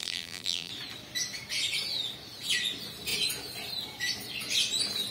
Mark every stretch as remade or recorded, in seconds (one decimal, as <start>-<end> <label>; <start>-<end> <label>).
0.0-0.7 remade; 0.7-5.1 recorded